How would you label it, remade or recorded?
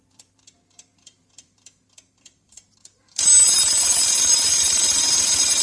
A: remade